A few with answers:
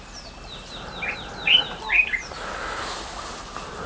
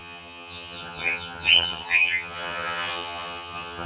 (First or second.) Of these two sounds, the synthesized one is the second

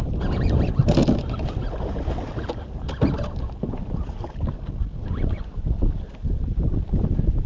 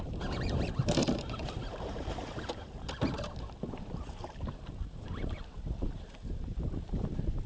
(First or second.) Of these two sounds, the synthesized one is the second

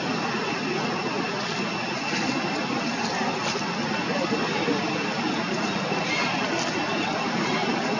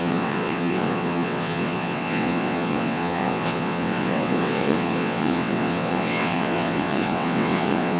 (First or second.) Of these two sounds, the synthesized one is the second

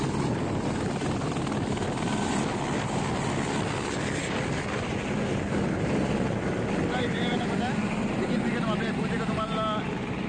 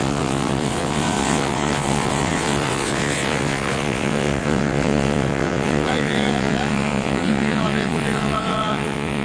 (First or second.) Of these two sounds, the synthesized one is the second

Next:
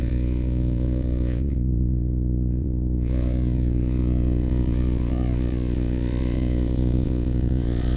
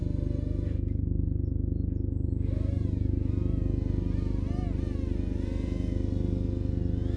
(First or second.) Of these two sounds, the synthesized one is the first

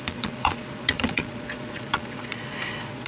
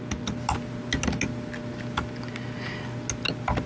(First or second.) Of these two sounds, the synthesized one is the first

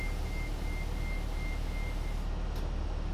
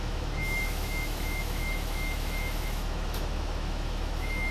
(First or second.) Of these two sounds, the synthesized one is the second